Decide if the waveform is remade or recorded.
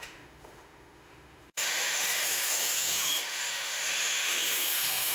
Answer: remade